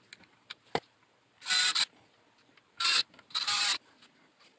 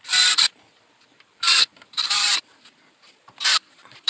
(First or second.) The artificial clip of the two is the second